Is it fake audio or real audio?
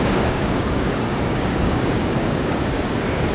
fake